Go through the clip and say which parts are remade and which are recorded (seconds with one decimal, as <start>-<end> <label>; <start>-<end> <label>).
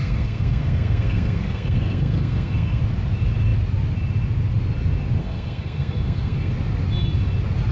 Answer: 0.0-2.8 remade; 2.8-5.2 recorded; 5.2-6.5 remade; 6.5-7.7 recorded